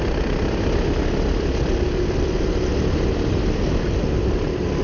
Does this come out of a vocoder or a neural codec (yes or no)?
no